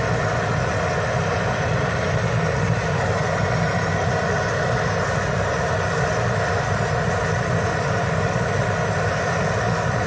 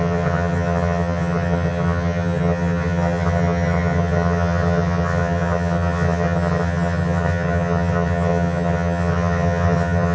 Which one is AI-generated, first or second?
second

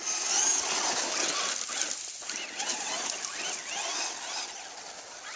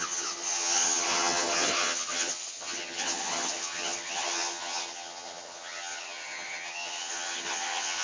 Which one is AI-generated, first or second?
second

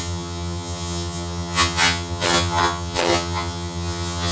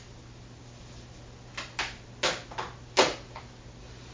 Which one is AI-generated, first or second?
first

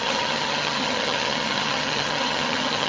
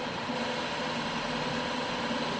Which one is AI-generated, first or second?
first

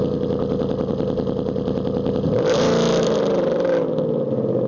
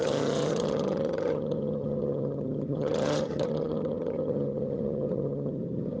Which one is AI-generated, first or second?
second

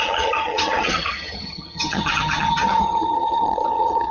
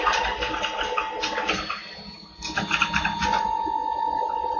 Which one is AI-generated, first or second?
first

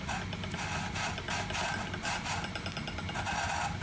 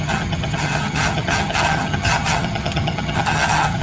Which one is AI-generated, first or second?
second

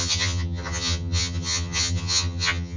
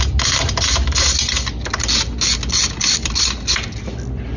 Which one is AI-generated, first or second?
first